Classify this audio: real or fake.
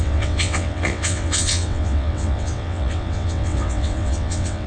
fake